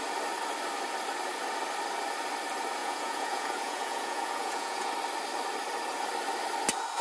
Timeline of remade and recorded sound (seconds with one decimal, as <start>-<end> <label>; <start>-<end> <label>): 0.0-2.8 recorded; 2.8-4.9 remade; 4.9-7.0 recorded